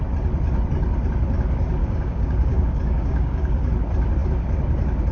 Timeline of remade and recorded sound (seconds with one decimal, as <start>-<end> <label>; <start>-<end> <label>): 0.0-1.8 recorded; 1.8-3.7 remade; 3.7-5.1 recorded